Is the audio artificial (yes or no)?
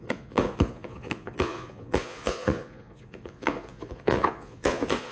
yes